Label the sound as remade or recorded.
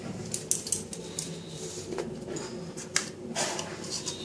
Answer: recorded